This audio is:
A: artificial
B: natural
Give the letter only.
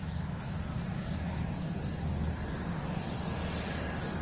B